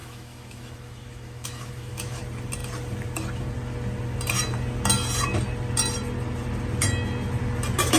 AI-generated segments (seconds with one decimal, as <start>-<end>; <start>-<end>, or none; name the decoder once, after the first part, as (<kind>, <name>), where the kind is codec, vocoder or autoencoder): 0.0-2.2 (autoencoder, DAC-VAE)